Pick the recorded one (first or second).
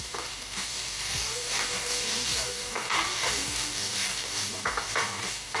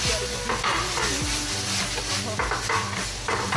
second